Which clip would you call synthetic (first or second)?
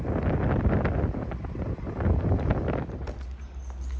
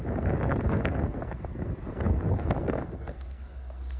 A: second